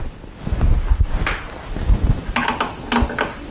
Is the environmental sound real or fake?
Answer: real